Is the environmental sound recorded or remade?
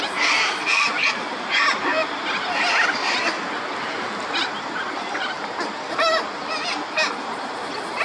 recorded